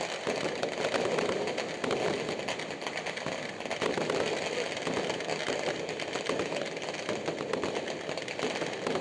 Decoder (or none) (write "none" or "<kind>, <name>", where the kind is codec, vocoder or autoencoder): none